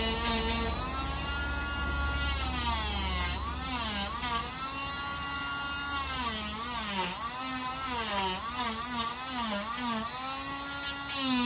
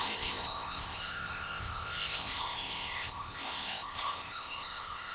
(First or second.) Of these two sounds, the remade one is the second